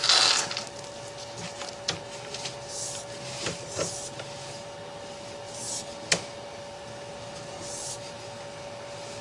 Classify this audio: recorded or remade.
recorded